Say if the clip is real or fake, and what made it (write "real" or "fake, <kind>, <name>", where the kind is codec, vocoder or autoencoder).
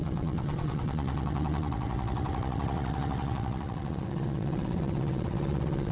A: fake, vocoder, WaveNeXt